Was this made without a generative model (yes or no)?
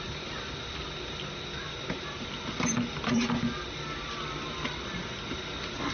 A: yes